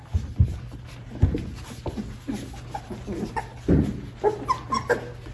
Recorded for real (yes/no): yes